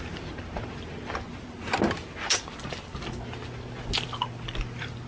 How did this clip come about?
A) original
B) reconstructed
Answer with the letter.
A